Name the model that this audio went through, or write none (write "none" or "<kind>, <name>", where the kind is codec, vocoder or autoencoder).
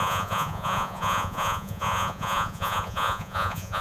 vocoder, Vocos